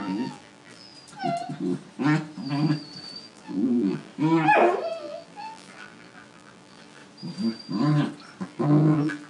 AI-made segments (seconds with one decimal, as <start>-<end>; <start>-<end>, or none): 0.0-0.9; 3.2-4.1; 5.0-7.0; 8.4-9.3